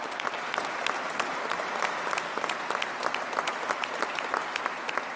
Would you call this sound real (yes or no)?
yes